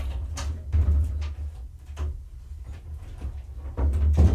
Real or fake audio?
real